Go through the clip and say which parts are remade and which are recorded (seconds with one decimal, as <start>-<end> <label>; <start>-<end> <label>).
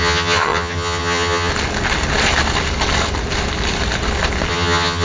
0.0-1.5 remade; 1.5-4.5 recorded; 4.5-5.0 remade